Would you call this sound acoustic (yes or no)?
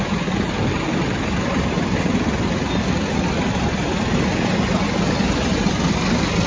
yes